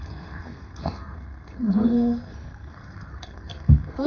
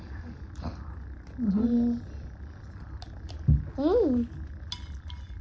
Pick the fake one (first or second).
first